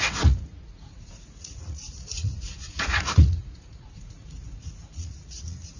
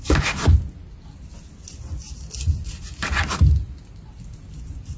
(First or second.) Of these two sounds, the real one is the second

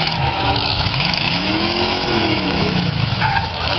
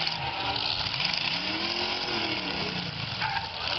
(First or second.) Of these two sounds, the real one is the second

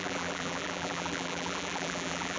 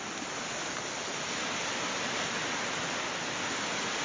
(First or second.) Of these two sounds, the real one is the second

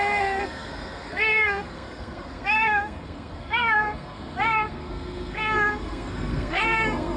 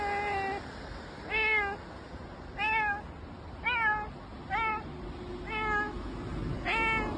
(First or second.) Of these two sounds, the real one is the second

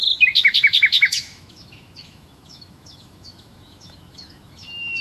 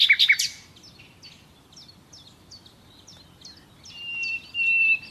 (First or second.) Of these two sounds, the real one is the second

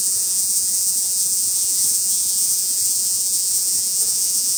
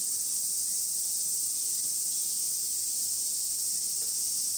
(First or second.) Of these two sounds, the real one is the second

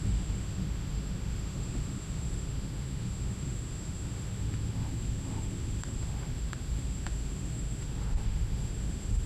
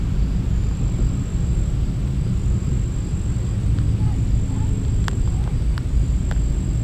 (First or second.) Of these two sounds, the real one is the second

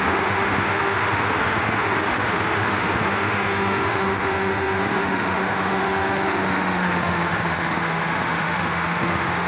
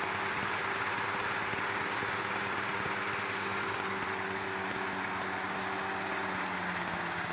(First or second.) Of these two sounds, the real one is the second